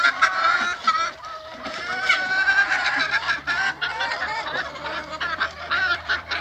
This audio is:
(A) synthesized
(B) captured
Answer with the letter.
A